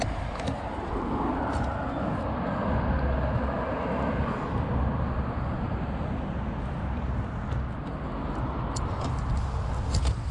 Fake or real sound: real